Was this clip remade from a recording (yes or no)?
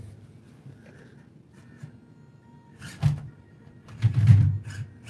no